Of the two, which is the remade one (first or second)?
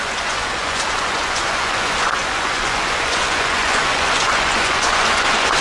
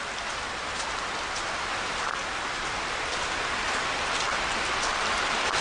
first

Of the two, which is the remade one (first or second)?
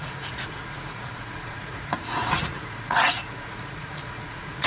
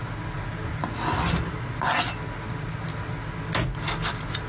first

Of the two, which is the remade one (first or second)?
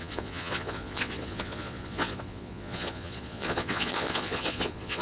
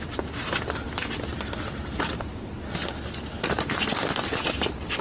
first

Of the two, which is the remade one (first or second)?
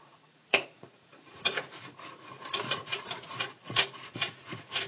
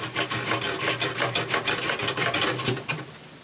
first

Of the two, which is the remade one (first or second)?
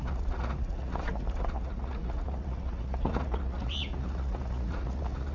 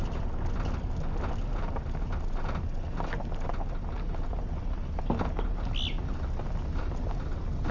first